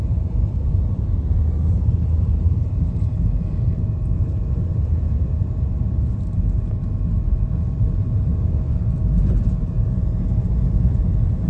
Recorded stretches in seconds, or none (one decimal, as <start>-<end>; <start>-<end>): 8.3-9.2